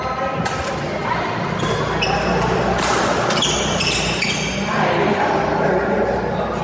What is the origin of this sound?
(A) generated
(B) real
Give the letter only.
B